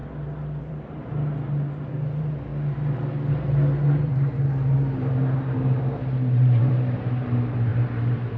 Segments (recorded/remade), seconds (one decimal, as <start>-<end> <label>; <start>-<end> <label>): 0.0-0.6 recorded; 0.6-1.0 remade; 1.0-1.9 recorded; 1.9-2.5 remade; 2.5-3.3 recorded; 3.3-8.4 remade